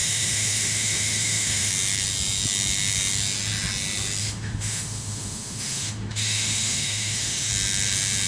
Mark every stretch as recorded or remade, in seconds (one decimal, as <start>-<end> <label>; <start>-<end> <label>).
0.0-1.7 remade; 1.7-4.2 recorded; 4.2-7.5 remade; 7.5-8.3 recorded